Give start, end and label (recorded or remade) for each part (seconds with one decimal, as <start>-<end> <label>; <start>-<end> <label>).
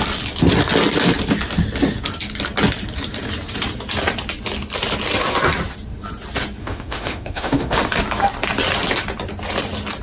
0.0-6.6 recorded; 6.6-7.8 remade; 7.8-10.0 recorded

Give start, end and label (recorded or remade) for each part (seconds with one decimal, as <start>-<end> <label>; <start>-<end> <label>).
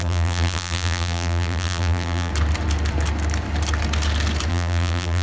0.0-2.3 remade; 2.3-4.5 recorded; 4.5-5.2 remade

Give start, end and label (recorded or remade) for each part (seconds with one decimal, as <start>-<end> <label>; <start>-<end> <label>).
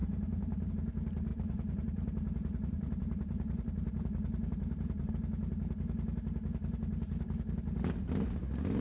0.0-0.7 remade; 0.7-1.3 recorded; 1.3-5.1 remade; 5.1-8.8 recorded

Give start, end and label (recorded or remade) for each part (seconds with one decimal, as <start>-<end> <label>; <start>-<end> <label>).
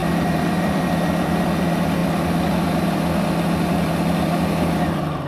0.0-0.9 remade; 0.9-5.3 recorded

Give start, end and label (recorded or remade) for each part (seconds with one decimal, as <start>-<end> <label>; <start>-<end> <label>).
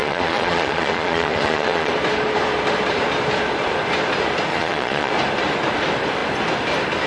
0.0-1.9 remade; 1.9-4.5 recorded; 4.5-5.1 remade; 5.1-7.1 recorded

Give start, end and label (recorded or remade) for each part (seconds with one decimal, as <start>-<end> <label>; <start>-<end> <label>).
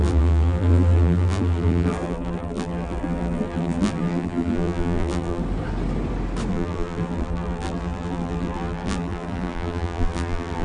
0.0-5.4 remade; 5.4-6.5 recorded; 6.5-10.6 remade